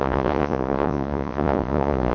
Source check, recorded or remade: remade